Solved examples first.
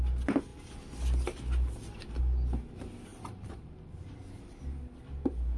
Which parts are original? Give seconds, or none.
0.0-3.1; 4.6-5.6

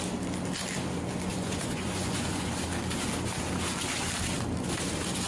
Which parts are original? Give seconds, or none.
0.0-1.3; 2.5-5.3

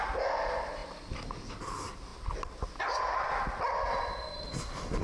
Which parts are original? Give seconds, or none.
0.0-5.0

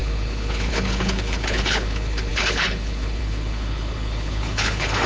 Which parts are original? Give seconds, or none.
none

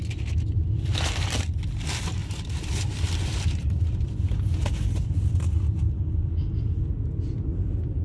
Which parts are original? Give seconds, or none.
0.0-2.2; 6.6-8.0

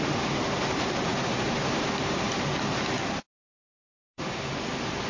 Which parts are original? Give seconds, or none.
none

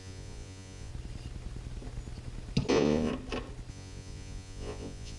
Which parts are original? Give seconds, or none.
0.9-2.7; 3.1-3.7

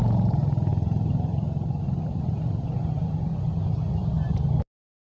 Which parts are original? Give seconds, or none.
0.0-5.0